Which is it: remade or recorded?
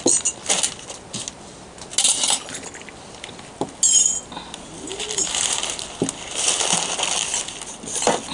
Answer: recorded